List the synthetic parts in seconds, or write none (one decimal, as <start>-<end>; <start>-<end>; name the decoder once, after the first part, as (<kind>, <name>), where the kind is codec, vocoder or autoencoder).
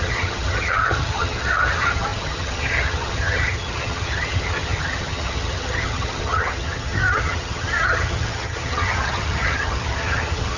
0.0-10.6 (vocoder, HiFi-GAN)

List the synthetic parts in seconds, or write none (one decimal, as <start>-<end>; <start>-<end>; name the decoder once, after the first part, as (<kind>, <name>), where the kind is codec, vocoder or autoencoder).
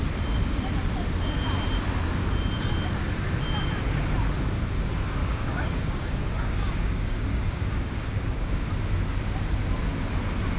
5.2-8.7 (codec, DAC)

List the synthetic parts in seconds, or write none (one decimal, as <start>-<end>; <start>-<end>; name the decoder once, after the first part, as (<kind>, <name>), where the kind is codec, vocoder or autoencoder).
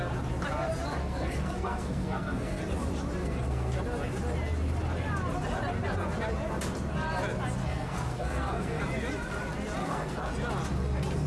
1.0-2.6 (codec, SNAC); 3.2-3.8; 7.6-8.8; 9.8-10.3